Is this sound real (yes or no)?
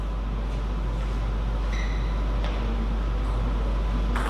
yes